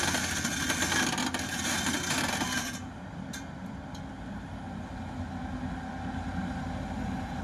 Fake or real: real